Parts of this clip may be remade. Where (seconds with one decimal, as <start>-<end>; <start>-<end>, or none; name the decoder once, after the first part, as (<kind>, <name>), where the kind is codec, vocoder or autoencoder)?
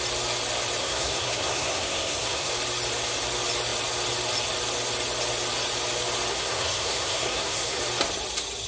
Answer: 0.8-2.5 (codec, SNAC); 6.3-7.8